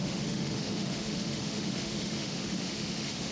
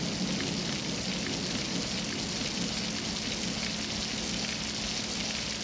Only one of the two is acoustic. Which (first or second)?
second